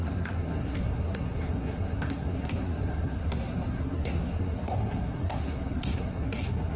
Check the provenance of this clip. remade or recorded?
remade